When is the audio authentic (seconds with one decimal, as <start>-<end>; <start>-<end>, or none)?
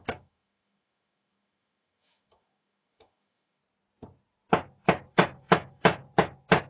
3.6-5.1; 6.0-6.7